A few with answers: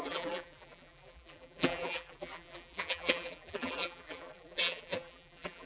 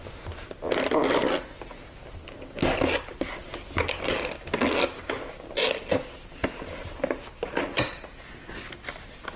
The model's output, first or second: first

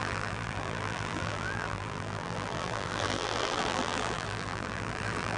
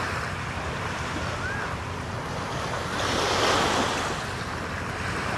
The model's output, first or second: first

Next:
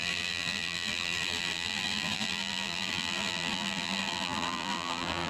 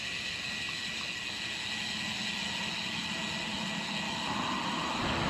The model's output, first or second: first